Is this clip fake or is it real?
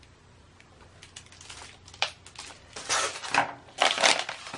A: real